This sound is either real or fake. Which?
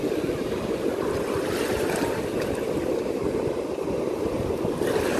real